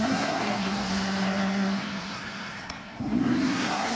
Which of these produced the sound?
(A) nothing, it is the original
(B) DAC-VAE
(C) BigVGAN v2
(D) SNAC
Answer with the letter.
D